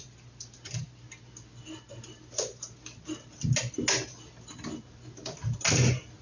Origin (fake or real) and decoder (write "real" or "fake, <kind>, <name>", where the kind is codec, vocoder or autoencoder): real